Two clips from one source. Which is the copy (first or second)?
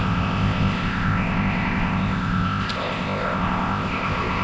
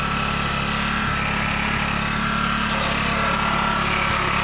first